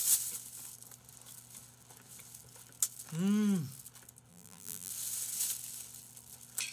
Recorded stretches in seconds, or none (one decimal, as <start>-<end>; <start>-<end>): 0.0-4.3; 4.9-6.7